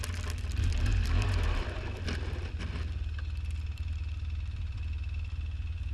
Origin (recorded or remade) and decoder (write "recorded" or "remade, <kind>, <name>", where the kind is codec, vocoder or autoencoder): remade, vocoder, BigVGAN v2